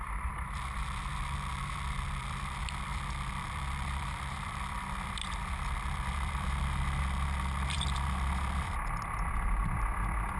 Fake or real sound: fake